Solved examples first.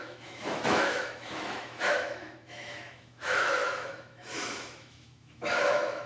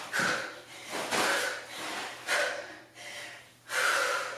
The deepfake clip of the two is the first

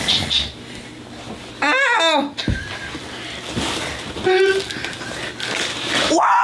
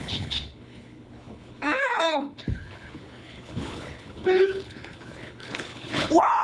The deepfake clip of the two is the second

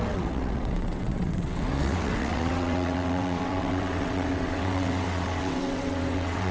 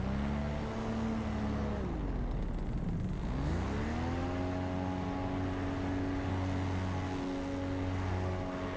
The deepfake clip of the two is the first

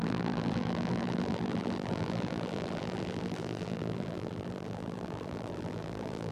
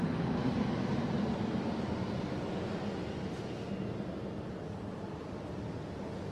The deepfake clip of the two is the first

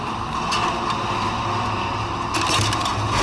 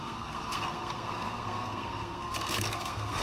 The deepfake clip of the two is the second